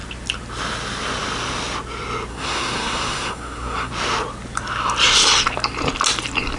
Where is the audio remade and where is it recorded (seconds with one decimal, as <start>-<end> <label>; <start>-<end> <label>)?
0.0-2.3 recorded; 2.3-3.9 remade; 3.9-6.6 recorded